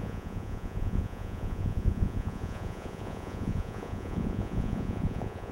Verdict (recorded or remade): remade